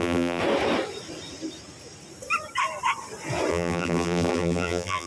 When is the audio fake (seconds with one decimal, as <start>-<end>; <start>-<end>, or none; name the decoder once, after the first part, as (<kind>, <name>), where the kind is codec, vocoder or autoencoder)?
0.0-0.4 (vocoder, BigVGAN v2); 3.5-5.1